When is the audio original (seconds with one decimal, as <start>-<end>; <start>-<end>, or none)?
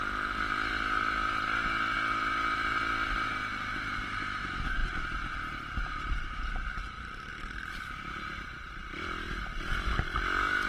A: 0.0-10.7